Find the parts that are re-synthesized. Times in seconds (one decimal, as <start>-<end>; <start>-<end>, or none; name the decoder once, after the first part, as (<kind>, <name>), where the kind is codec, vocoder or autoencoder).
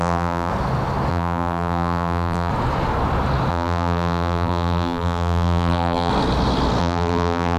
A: 0.0-0.5 (vocoder, BigVGAN v2); 1.1-2.5; 3.5-6.1; 6.8-7.6